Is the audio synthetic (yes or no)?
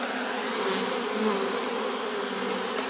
no